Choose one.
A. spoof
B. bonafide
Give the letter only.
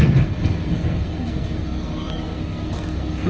A